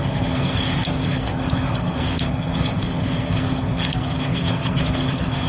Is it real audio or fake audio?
fake